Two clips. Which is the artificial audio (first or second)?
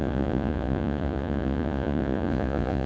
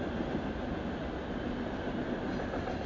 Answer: first